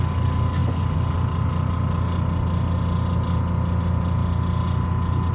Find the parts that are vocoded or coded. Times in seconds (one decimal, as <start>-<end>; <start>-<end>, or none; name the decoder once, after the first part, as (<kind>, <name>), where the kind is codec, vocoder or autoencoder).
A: none